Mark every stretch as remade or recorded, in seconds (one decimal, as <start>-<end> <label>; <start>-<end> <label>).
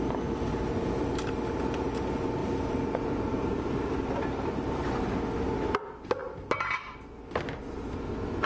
0.0-0.5 recorded; 0.5-1.3 remade; 1.3-2.4 recorded; 2.4-5.0 remade; 5.0-8.5 recorded